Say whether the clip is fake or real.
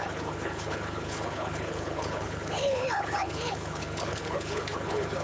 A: fake